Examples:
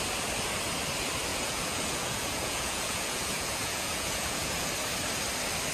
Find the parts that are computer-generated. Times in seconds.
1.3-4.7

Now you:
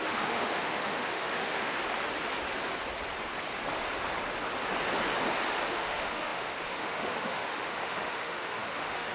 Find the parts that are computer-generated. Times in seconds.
0.0-1.8; 5.7-9.1